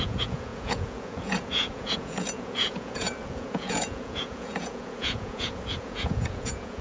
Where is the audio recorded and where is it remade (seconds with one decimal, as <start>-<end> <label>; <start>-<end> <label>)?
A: 0.0-6.8 remade